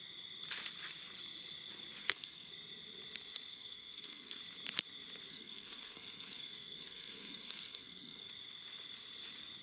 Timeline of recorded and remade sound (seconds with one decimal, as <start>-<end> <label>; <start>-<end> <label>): 0.0-2.0 recorded; 2.0-2.5 remade; 2.5-3.5 recorded; 3.5-4.4 remade; 4.4-5.3 recorded; 5.3-8.3 remade; 8.3-9.6 recorded

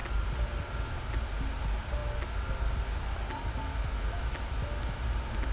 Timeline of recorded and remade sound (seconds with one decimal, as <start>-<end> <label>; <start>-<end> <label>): 0.0-5.5 recorded